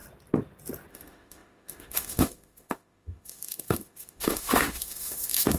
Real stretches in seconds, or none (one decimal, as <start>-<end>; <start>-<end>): 0.0-0.9